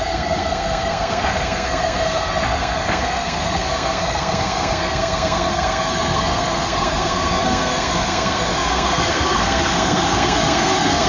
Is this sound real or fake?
fake